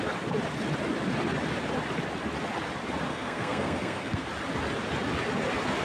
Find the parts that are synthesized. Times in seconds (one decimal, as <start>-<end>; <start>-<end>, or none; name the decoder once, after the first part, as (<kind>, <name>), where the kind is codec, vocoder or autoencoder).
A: 3.1-4.3 (codec, SNAC)

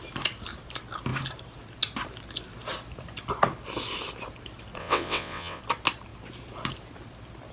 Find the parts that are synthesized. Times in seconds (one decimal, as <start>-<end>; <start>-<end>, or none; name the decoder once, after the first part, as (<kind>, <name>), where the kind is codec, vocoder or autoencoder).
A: 4.8-5.6 (vocoder, WaveNeXt)

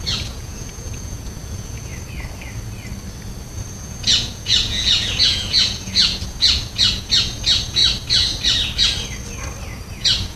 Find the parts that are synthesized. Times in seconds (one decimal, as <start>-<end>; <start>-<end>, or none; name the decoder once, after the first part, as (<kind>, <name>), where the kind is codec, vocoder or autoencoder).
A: 0.0-1.9 (vocoder, Vocos); 3.7-7.8; 9.9-10.4

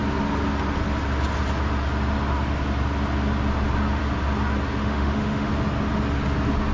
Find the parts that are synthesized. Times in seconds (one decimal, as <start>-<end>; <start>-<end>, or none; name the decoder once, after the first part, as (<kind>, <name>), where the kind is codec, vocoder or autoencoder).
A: 4.8-5.5 (autoencoder, DAC-VAE)

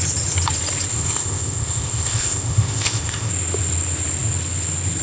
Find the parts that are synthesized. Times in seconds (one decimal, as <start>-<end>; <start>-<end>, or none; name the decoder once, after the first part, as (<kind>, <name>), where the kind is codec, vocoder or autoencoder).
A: 0.9-3.3 (codec, ZipCodec)